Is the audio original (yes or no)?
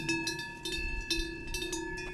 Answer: yes